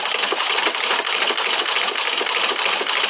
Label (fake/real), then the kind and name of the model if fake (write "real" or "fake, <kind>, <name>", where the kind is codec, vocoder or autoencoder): real